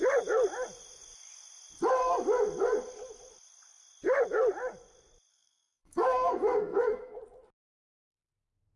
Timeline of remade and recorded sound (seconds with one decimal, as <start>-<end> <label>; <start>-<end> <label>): 0.0-5.3 recorded; 5.3-7.2 remade; 7.2-8.8 recorded